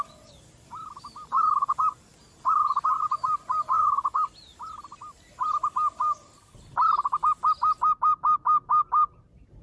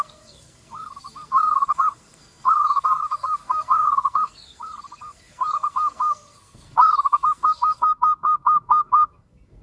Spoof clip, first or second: second